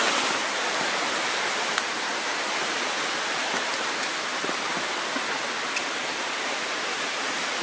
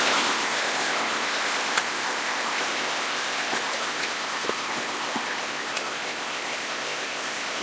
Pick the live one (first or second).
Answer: first